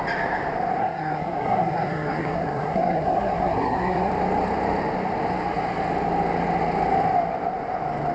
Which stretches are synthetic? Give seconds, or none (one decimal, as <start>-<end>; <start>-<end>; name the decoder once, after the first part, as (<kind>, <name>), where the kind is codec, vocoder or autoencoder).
0.8-4.1 (codec, SNAC)